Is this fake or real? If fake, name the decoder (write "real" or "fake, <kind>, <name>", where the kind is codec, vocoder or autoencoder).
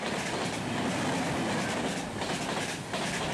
real